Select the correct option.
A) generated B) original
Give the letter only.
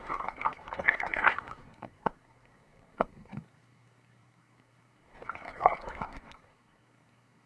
A